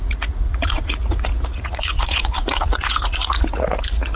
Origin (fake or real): fake